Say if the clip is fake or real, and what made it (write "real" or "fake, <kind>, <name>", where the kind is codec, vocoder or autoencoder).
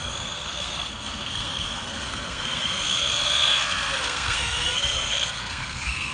fake, codec, SNAC